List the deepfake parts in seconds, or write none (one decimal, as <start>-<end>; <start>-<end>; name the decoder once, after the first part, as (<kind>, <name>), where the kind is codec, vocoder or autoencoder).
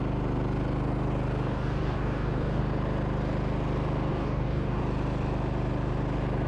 1.4-2.6 (codec, DAC); 4.1-4.8